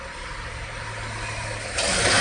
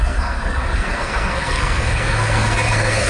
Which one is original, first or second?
first